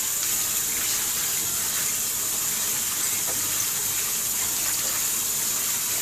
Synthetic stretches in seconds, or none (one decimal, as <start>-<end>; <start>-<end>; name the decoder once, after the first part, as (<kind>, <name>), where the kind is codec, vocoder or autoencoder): none